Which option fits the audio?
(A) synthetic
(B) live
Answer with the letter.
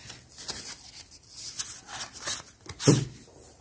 B